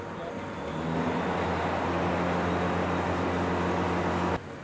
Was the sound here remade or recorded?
recorded